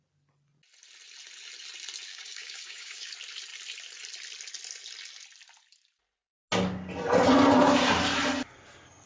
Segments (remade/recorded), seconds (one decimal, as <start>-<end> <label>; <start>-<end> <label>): 0.0-2.1 recorded; 2.1-3.1 remade; 3.1-9.1 recorded